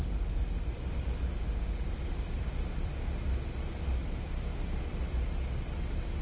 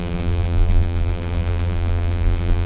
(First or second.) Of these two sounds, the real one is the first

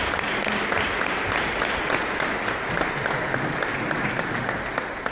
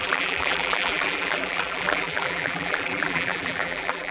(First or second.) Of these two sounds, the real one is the first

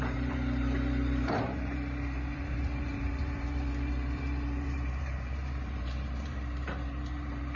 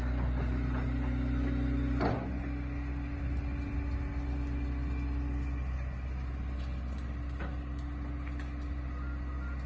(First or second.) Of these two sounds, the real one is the second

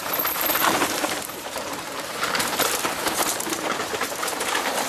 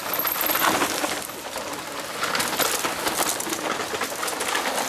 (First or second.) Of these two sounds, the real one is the second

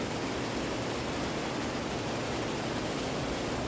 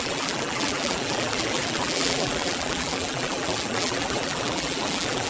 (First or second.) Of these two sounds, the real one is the first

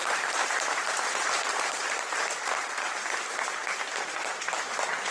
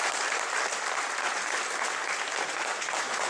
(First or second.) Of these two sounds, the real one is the second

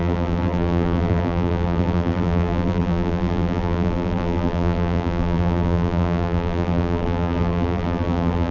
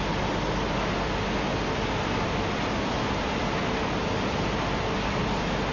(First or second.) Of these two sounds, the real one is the second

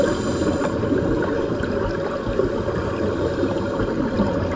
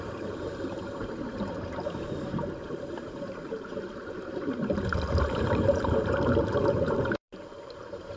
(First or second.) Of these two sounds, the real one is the first